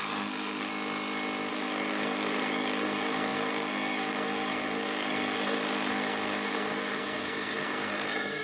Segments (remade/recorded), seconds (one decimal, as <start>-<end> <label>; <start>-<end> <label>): 0.0-0.7 remade; 0.7-1.5 recorded; 1.5-8.4 remade